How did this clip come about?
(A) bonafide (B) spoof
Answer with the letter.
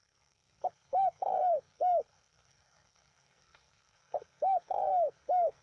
B